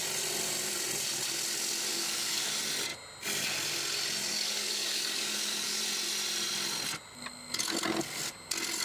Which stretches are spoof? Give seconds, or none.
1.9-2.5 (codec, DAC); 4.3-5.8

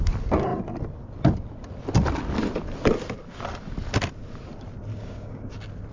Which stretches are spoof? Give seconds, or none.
4.9-5.4 (codec, DAC)

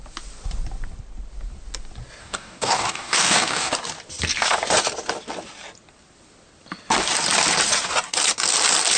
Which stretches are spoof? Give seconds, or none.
2.2-3.7 (codec, DAC)